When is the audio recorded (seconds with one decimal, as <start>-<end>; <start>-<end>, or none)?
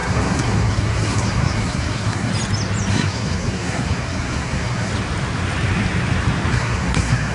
2.3-2.9; 4.9-6.5